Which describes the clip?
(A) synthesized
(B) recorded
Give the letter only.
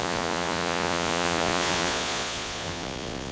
A